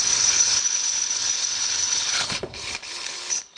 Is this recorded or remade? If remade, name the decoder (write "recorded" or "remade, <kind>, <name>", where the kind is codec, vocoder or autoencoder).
remade, codec, HILCodec